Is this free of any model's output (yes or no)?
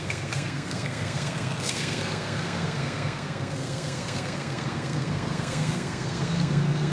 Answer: no